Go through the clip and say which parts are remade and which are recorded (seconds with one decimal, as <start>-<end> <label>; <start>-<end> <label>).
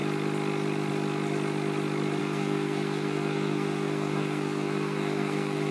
0.0-2.2 recorded; 2.2-5.7 remade